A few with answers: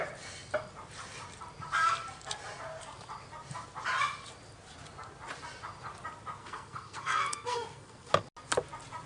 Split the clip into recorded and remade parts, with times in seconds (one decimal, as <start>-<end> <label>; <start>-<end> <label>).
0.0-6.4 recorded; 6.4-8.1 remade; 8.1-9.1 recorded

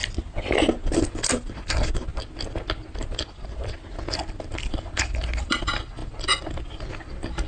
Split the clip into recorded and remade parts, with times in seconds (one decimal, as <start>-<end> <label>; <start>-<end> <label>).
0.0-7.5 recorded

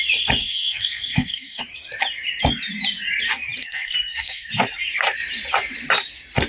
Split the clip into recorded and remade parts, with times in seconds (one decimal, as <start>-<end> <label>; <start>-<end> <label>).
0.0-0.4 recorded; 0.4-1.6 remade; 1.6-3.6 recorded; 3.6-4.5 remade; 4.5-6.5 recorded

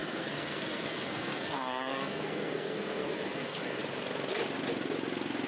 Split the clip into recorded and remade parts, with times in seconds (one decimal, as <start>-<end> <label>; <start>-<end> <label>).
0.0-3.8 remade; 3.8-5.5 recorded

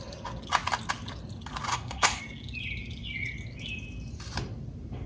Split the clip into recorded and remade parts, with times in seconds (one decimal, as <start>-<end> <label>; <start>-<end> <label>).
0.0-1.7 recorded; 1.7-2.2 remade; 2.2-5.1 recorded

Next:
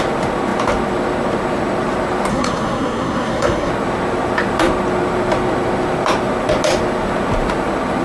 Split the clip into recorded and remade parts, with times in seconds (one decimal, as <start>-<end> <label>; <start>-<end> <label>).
0.0-2.3 recorded; 2.3-3.7 remade; 3.7-8.0 recorded

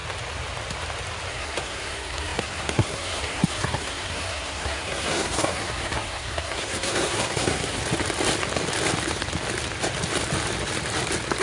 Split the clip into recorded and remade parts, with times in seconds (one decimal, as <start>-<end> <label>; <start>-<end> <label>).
0.0-1.3 recorded; 1.3-7.8 remade; 7.8-11.4 recorded